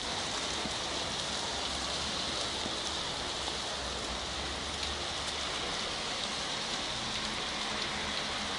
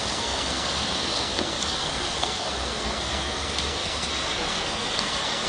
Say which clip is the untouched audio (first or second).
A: first